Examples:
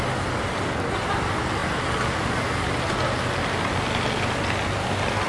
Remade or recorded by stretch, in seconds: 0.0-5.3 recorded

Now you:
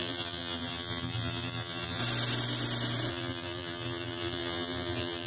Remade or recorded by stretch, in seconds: 0.0-2.0 remade; 2.0-3.1 recorded; 3.1-5.3 remade

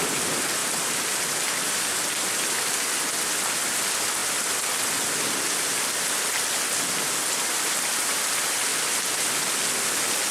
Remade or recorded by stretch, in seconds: 0.0-0.6 recorded; 0.6-2.0 remade; 2.0-8.7 recorded; 8.7-9.4 remade; 9.4-10.3 recorded

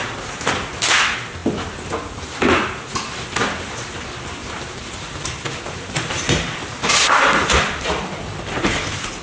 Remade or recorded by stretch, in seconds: 0.0-4.4 recorded; 4.4-7.4 remade; 7.4-9.2 recorded